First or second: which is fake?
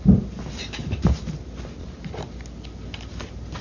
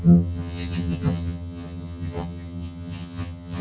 second